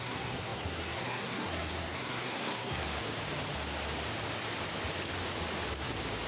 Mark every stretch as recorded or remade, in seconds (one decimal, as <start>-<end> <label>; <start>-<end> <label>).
0.0-2.8 remade; 2.8-6.3 recorded